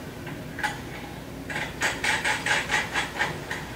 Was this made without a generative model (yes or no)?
yes